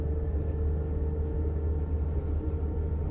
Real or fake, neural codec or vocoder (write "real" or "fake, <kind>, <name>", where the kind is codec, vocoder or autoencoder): real